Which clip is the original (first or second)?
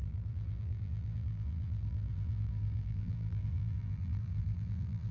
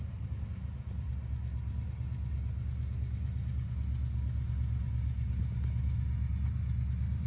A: second